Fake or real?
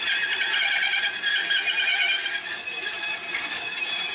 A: real